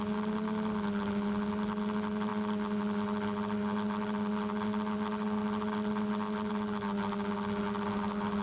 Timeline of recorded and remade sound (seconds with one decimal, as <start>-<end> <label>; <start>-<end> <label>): 0.0-8.4 recorded